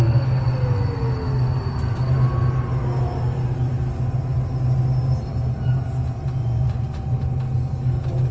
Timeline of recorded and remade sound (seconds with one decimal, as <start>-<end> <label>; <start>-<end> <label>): 0.0-6.4 recorded; 6.4-7.1 remade; 7.1-8.3 recorded